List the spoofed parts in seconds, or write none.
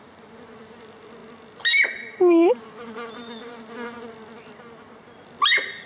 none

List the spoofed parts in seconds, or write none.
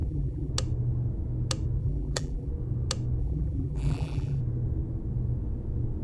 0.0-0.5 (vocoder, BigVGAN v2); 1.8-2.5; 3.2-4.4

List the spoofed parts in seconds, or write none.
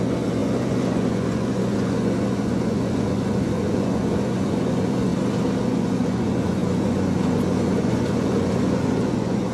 0.0-5.1 (vocoder, Vocos); 5.6-9.5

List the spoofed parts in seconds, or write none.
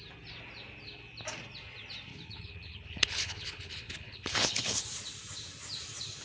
2.1-4.8 (codec, HILCodec)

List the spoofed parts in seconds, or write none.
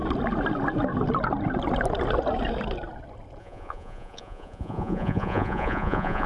3.4-6.3 (vocoder, Vocos)